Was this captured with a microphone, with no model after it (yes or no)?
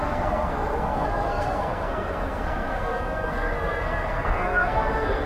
no